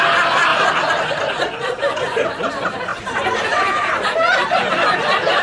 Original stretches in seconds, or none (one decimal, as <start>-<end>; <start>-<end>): 0.0-5.4